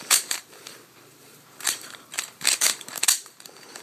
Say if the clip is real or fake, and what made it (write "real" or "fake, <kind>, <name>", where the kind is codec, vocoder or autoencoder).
fake, vocoder, BigVGAN v2